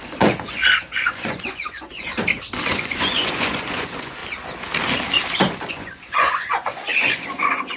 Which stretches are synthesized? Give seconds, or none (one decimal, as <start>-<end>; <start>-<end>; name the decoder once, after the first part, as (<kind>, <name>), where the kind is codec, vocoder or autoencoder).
0.0-2.1 (vocoder, Vocos); 2.6-4.2; 5.7-7.8

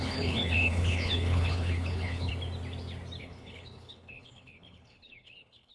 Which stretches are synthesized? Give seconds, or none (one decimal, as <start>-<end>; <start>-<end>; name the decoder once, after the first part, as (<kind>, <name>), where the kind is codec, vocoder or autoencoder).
0.0-2.3 (codec, HILCodec); 3.2-5.7

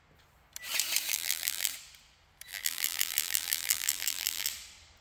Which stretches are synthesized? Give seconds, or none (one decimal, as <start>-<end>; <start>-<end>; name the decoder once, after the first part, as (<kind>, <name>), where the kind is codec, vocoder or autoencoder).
1.1-1.7 (vocoder, BigVGAN v2); 2.5-4.5

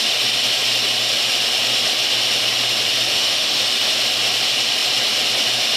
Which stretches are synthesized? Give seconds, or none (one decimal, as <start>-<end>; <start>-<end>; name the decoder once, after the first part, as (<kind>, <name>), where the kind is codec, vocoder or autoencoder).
3.1-3.6 (autoencoder, DAC-VAE)

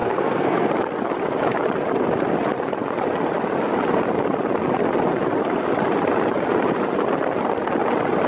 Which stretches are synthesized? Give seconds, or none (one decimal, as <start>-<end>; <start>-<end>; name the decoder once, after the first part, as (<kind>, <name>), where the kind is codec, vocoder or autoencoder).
0.0-0.7 (codec, SNAC)

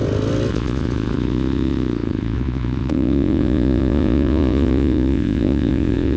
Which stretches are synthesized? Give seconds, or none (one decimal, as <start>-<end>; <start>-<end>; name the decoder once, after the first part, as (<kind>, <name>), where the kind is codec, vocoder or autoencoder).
0.5-6.2 (vocoder, Vocos)

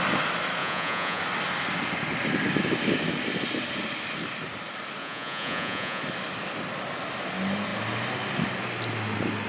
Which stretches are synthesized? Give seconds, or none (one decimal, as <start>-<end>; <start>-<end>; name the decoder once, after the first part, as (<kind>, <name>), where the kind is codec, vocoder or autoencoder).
0.6-1.2 (vocoder, Vocos); 5.0-6.0